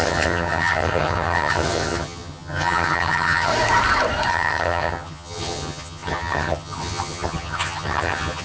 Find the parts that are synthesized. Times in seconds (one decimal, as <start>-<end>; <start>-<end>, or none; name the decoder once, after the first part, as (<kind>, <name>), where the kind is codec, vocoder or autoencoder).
0.0-3.5 (vocoder, HiFi-GAN); 4.3-8.4